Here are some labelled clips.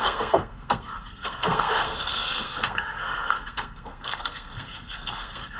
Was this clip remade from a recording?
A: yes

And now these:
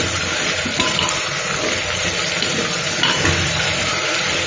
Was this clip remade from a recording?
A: no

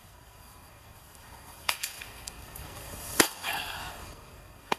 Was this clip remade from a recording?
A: yes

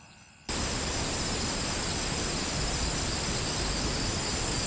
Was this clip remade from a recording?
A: no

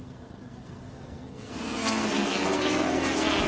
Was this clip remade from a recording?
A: yes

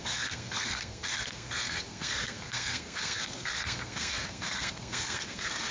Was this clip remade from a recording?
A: yes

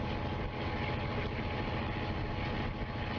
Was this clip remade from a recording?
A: no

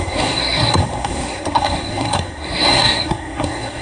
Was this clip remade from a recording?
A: yes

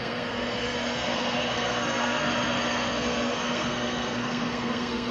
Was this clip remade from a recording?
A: yes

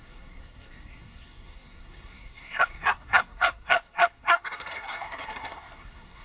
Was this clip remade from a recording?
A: yes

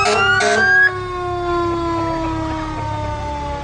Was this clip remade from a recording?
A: no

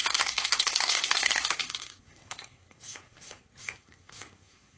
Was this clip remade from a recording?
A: yes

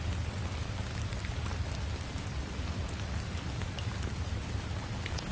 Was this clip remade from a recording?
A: no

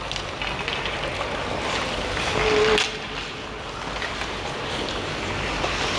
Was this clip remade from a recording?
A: no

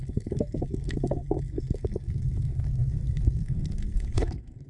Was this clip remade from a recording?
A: yes